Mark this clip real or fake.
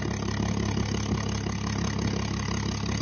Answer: real